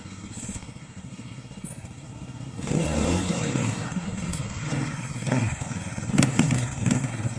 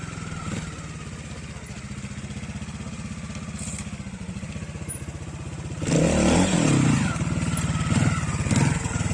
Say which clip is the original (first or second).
second